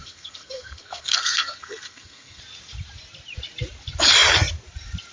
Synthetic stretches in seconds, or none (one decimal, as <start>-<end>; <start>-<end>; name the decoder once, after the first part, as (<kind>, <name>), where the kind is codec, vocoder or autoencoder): 0.0-2.4 (codec, SNAC)